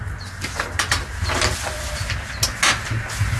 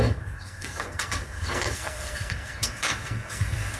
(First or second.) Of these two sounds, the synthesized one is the second